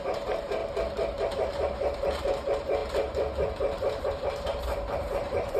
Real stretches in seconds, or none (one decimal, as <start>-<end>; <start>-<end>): 0.6-1.3; 2.8-4.1